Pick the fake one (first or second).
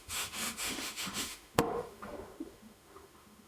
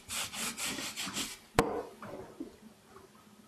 first